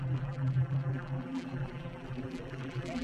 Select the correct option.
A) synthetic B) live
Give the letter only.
A